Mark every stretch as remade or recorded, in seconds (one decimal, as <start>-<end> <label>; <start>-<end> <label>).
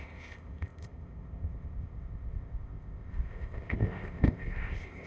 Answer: 0.0-5.1 remade